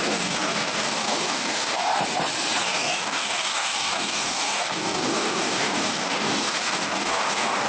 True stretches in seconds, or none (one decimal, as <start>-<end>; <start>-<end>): 1.9-2.6